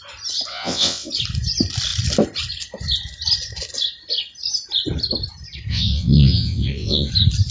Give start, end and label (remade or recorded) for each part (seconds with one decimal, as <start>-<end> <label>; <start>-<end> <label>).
0.0-0.5 recorded; 0.5-1.1 remade; 1.1-5.7 recorded; 5.7-7.1 remade; 7.1-7.5 recorded